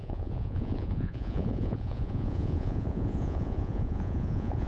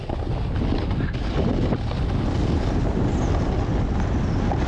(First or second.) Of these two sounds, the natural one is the second